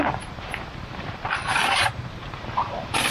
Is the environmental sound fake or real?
fake